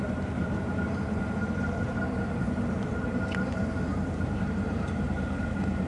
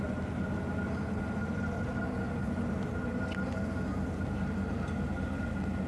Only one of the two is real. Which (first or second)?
second